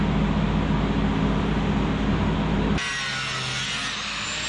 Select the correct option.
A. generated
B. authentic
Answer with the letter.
B